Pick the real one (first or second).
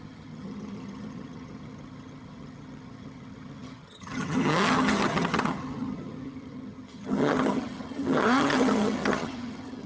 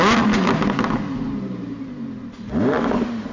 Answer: second